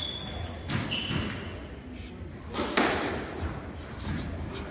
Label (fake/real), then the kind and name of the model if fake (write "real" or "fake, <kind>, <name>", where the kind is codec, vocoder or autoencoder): real